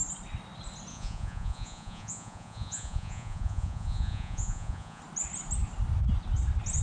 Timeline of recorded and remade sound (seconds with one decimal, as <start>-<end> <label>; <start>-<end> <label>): 0.0-0.9 recorded; 0.9-5.0 remade; 5.0-6.8 recorded